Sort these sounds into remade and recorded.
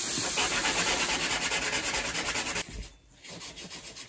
recorded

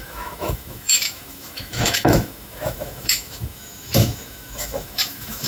remade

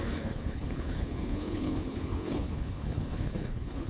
remade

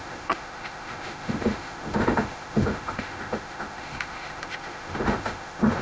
remade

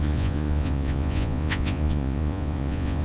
remade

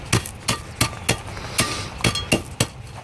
recorded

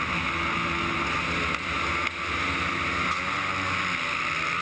recorded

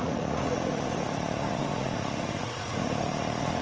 remade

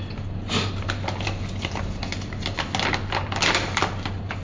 recorded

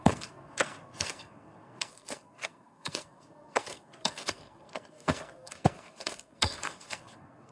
remade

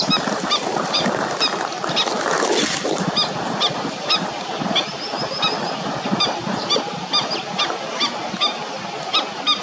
recorded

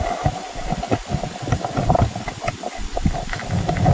recorded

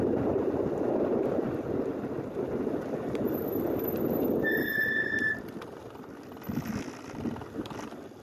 recorded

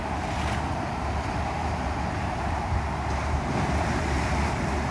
remade